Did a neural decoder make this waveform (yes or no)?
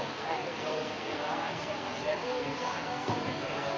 yes